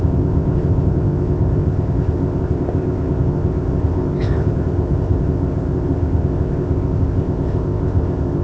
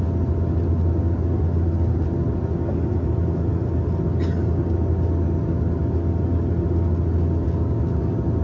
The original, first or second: second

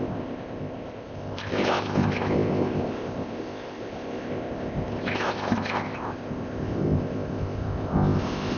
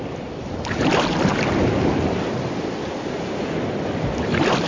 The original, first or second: second